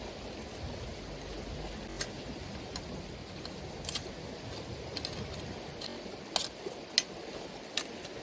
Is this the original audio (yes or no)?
yes